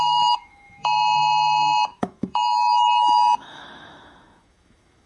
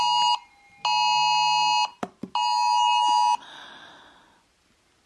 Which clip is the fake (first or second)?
first